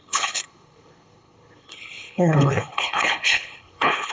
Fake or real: fake